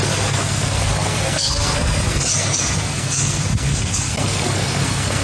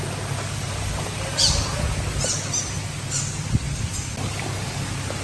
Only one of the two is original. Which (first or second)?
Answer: second